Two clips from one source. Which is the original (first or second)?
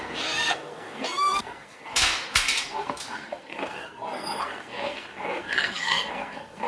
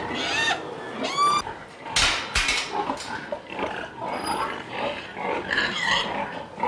second